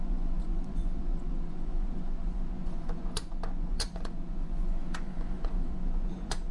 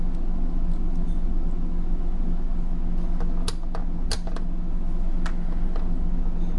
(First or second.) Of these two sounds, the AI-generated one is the first